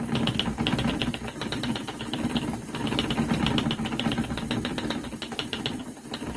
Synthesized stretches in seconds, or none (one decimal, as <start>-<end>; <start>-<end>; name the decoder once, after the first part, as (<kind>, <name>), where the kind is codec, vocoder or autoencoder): none